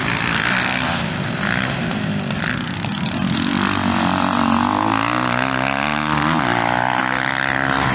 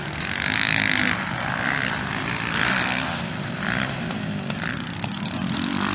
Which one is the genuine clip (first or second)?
first